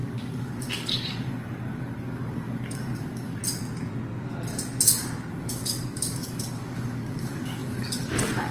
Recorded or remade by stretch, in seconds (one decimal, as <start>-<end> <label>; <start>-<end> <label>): 0.0-3.4 remade; 3.4-5.3 recorded; 5.3-8.5 remade